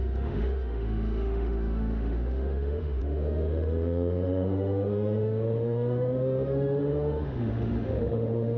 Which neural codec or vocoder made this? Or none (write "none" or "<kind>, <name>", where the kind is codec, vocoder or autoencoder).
autoencoder, DAC-VAE